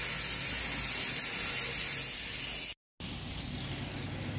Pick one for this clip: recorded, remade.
recorded